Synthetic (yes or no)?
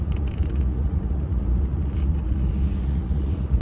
yes